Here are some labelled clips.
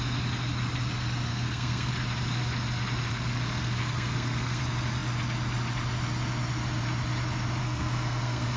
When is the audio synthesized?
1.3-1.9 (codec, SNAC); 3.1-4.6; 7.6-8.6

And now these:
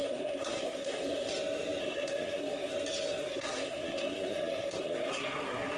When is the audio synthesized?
0.0-1.3 (codec, SNAC); 1.8-2.7; 3.2-5.8